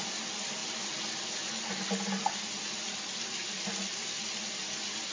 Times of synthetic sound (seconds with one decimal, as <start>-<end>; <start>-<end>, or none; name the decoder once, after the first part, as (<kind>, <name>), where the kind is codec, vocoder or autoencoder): none